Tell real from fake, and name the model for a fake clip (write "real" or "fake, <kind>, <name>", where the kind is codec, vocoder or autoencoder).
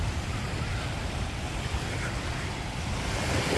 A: fake, vocoder, BigVGAN v2